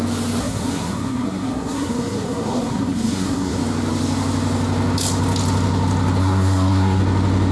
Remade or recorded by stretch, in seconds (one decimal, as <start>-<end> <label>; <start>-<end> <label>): 0.0-0.4 recorded; 0.4-3.6 remade; 3.6-6.2 recorded; 6.2-7.0 remade; 7.0-7.5 recorded